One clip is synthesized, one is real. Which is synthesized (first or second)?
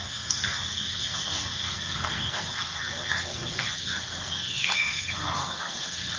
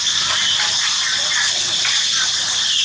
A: first